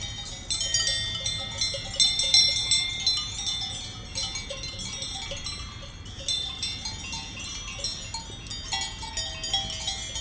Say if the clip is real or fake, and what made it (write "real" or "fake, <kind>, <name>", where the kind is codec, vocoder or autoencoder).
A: real